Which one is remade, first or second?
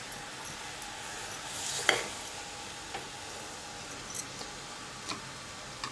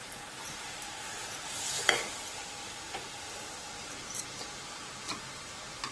second